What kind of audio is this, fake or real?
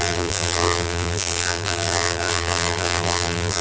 fake